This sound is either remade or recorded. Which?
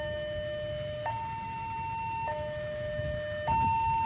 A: remade